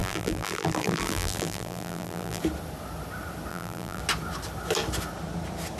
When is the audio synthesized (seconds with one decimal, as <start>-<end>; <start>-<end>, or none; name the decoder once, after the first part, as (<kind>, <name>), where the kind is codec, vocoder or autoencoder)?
0.0-2.4 (vocoder, BigVGAN v2); 3.5-4.0